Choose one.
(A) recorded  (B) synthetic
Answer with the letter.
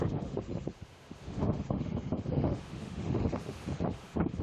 B